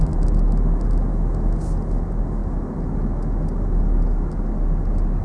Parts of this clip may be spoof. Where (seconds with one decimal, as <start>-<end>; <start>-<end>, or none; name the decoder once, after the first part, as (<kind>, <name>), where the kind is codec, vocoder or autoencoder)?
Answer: none